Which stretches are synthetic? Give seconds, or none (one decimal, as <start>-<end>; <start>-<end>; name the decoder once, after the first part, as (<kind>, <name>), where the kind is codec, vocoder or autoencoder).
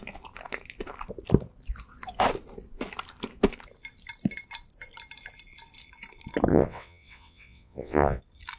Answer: 6.5-8.2 (vocoder, WaveNeXt)